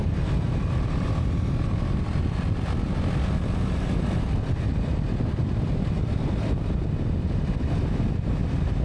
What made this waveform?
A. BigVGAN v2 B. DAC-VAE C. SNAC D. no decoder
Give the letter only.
D